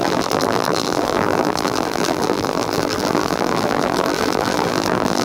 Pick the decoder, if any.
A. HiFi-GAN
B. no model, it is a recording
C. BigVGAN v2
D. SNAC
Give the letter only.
C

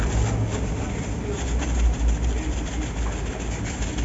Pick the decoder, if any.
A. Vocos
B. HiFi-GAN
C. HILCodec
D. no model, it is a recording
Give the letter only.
D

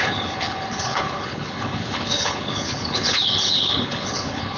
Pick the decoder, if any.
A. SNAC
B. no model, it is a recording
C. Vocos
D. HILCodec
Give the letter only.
D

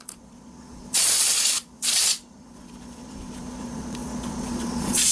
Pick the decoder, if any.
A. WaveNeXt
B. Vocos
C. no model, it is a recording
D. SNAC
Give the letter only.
B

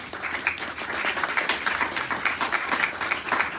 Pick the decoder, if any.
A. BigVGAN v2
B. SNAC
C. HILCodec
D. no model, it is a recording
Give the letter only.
D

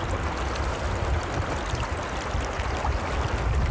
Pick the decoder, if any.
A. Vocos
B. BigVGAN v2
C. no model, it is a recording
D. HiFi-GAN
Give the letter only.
C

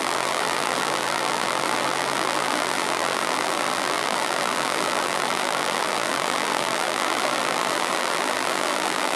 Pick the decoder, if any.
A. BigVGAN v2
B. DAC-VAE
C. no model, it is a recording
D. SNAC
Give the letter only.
A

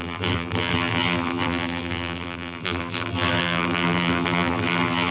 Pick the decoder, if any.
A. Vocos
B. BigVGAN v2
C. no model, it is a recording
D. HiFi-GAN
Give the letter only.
B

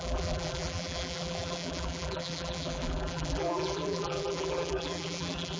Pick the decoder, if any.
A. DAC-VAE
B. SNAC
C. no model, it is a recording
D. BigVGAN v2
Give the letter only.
D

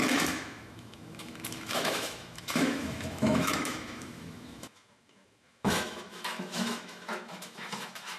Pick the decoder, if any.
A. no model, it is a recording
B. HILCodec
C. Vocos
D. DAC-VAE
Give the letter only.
D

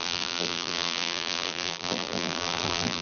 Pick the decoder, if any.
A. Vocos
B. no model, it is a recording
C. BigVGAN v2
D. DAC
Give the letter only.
C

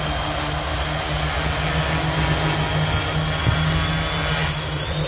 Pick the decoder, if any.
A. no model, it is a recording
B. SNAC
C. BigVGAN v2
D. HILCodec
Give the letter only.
A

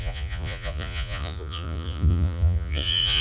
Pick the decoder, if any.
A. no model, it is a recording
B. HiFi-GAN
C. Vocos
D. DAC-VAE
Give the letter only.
C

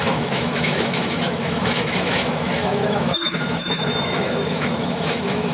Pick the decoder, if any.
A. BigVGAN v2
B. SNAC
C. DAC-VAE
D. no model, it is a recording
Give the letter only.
C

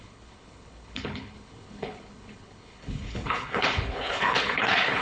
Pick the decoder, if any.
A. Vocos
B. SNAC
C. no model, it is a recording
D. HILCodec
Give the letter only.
D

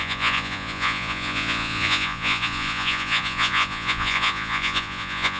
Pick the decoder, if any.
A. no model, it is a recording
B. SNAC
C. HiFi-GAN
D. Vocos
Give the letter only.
D